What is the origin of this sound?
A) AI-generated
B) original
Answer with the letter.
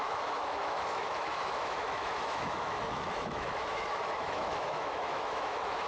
A